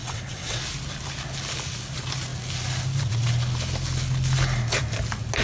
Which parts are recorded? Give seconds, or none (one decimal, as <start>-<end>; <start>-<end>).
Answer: 0.6-5.4